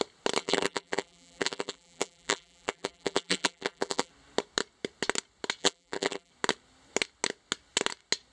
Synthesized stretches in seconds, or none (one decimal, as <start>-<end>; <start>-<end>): 0.4-4.1; 5.6-6.3